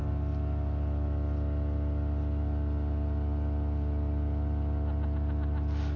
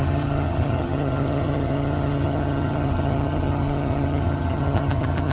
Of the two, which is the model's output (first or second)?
second